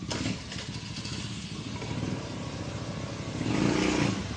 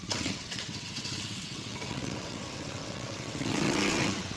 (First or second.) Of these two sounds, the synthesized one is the second